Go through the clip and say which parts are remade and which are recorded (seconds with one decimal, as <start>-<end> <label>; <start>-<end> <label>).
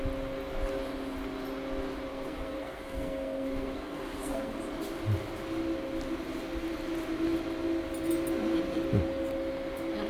0.0-2.1 recorded; 2.1-4.6 remade; 4.6-10.1 recorded